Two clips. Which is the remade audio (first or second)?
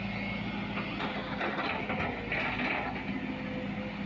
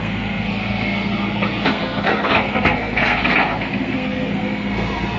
second